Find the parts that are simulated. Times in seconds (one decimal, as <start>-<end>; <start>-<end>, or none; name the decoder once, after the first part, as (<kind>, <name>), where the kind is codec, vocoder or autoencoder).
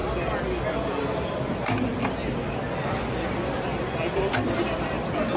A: none